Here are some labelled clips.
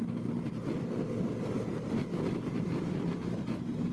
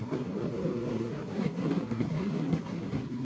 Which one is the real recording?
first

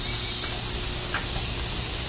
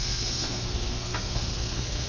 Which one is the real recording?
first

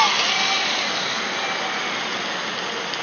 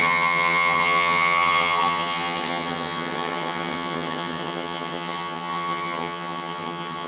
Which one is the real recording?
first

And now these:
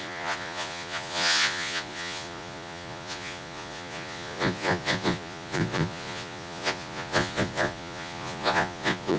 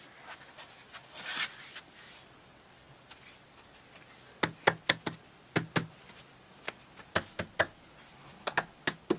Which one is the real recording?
second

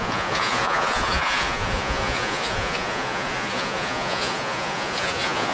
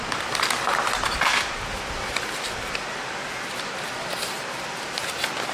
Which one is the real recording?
second